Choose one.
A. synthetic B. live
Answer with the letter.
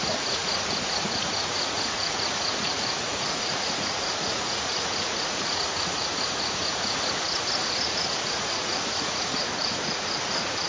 A